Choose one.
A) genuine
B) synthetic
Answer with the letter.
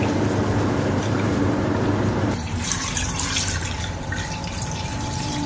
B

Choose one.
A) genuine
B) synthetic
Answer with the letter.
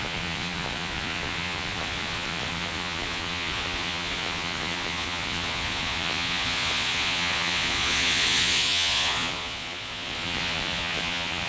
B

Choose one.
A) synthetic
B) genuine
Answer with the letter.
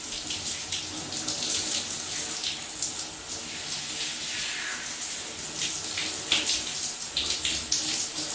B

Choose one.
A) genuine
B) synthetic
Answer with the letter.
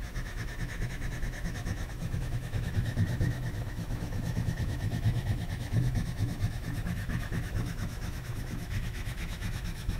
B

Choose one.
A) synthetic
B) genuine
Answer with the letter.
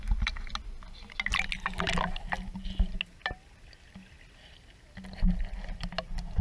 B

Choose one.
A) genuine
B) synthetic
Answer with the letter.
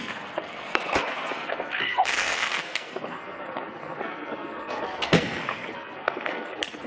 B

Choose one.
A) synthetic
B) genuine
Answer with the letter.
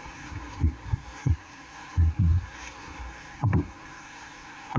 A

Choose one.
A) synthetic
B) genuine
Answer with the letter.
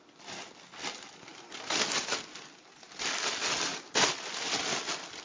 B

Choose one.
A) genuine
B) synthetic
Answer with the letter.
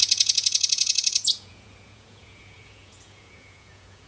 B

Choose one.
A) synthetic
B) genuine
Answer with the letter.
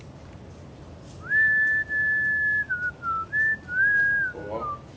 B